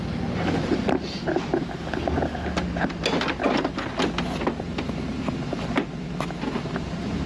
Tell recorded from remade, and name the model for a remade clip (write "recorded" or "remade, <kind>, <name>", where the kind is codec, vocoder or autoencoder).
recorded